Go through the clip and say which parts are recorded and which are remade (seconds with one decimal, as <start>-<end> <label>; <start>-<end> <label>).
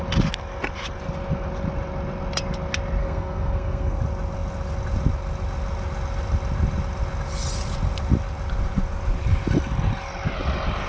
0.0-3.0 recorded; 3.0-4.0 remade; 4.0-10.9 recorded